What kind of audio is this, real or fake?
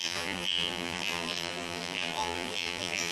fake